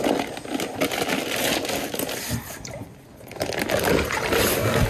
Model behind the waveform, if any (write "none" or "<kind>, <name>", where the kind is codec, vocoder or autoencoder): none